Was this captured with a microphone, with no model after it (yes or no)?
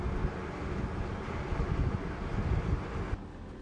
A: yes